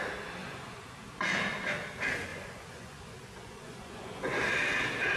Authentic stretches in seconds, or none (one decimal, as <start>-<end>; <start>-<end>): 0.0-0.4; 0.9-2.3; 4.4-5.2